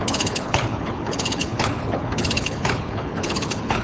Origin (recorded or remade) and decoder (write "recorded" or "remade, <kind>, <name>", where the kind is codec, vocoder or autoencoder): remade, codec, HILCodec